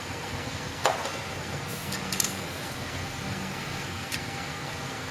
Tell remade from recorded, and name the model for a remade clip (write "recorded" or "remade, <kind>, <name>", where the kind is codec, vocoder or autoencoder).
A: remade, codec, SNAC